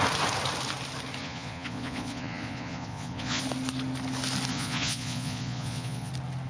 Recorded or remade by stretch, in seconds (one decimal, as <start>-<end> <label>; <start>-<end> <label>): 0.0-1.2 recorded; 1.2-3.4 remade; 3.4-4.5 recorded; 4.5-6.1 remade; 6.1-6.5 recorded